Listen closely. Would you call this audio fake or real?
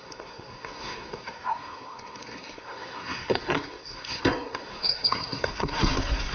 fake